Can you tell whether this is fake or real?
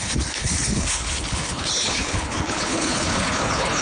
fake